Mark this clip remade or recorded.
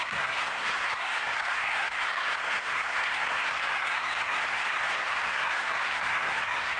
remade